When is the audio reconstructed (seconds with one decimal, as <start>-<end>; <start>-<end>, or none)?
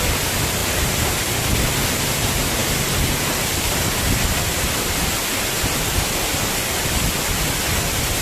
0.6-1.2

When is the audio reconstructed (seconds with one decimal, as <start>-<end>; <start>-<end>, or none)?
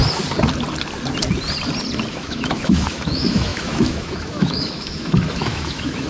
2.1-6.1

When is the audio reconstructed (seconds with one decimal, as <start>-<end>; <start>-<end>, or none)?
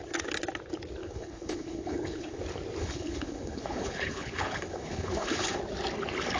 1.0-2.4; 2.8-5.6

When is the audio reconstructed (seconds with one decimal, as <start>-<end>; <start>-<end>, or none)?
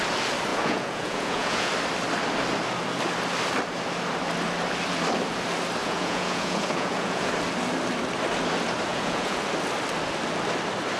0.5-1.7; 5.8-7.3; 8.9-9.4